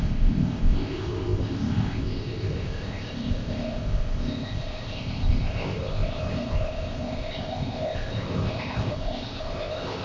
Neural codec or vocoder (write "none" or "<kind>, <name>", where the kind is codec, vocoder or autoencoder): codec, ZipCodec